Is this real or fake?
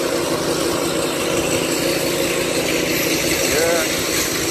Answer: real